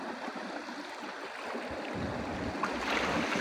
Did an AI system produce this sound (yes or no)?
no